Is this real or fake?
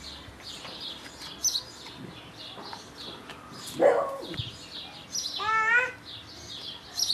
real